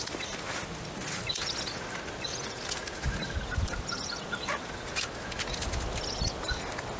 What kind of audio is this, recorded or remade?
recorded